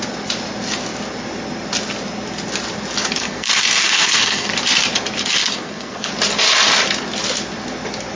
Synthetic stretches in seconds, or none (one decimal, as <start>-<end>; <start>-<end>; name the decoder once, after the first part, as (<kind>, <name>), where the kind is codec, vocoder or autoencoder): 3.2-4.5 (codec, SNAC); 5.4-6.1